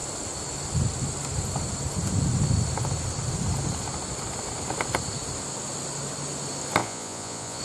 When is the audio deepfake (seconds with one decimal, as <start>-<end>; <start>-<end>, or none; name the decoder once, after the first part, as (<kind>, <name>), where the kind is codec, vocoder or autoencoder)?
6.8-7.6 (vocoder, Vocos)